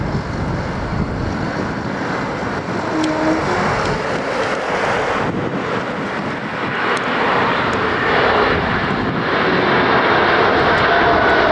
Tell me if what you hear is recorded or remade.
recorded